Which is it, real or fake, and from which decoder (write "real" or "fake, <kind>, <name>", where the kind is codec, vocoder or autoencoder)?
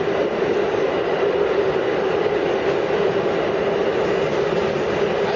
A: real